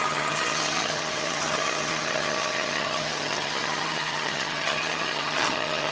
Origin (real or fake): fake